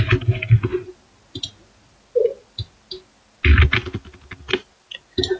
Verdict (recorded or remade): recorded